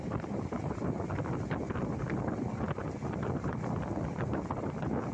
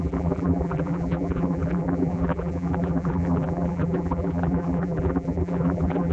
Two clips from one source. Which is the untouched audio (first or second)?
first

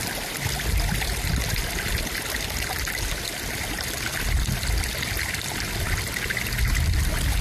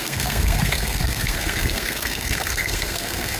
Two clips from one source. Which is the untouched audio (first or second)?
first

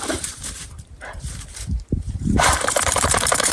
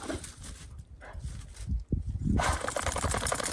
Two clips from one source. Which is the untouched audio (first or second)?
second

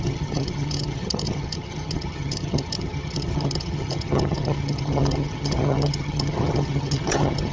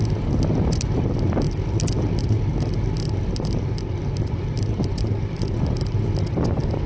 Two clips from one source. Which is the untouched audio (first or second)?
second